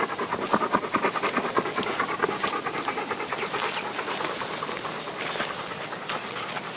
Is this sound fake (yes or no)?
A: no